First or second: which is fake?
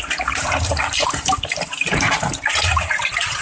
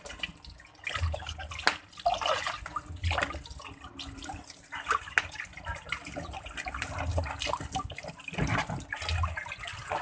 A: first